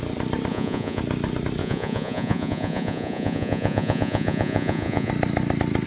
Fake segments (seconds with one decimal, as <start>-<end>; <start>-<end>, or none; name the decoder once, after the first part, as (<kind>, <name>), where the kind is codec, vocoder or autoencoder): 0.5-1.0 (vocoder, Vocos); 1.6-5.1